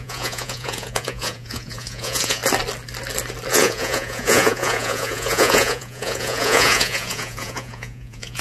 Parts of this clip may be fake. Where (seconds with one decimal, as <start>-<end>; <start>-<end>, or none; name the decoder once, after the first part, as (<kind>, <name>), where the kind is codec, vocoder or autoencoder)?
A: 0.0-2.4 (vocoder, Vocos); 3.5-8.4